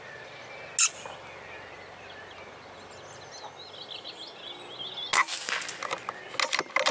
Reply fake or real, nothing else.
real